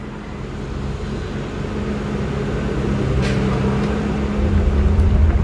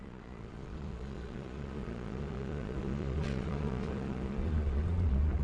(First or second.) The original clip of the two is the first